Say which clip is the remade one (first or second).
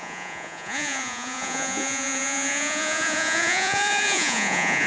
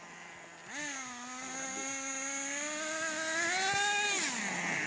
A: first